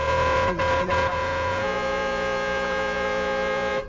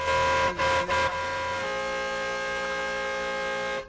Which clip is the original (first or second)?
second